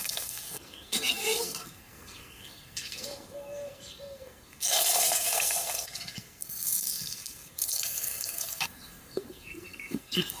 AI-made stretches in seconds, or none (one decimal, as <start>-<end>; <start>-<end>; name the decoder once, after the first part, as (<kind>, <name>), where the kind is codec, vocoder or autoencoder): 0.0-10.4 (codec, SNAC)